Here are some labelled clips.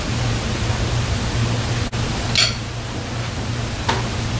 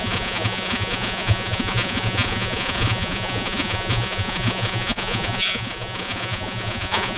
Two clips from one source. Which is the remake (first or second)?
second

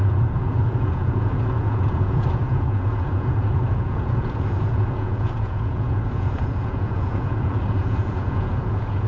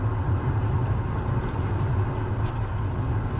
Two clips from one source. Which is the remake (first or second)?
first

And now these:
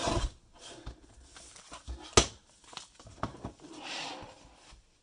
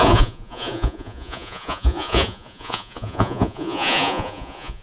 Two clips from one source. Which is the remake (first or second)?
second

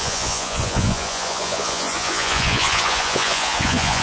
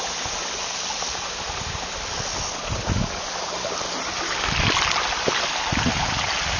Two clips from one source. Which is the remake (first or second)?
first